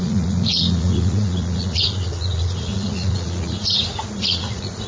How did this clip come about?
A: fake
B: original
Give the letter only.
A